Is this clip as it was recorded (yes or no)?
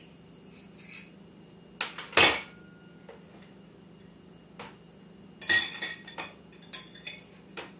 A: yes